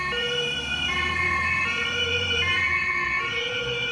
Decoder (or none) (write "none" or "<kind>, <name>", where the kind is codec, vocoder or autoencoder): vocoder, BigVGAN v2